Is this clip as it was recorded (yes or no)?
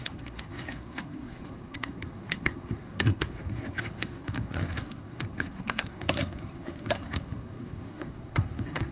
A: no